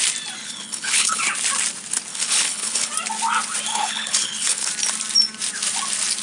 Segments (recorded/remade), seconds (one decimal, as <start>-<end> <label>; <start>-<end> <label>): 0.0-0.4 recorded; 0.4-1.2 remade; 1.2-2.1 recorded; 2.1-2.9 remade; 2.9-3.7 recorded; 3.7-4.7 remade; 4.7-6.2 recorded